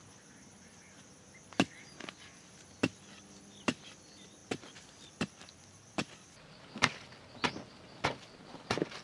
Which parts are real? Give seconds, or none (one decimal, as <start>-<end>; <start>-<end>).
0.0-4.4